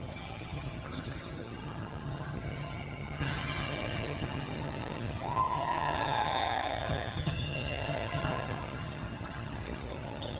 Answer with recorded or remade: remade